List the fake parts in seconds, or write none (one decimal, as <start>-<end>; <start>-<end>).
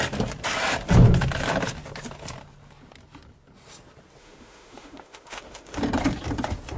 4.2-5.8